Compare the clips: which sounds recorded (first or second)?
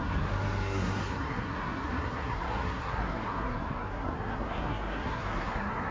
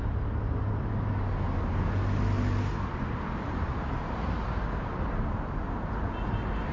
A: second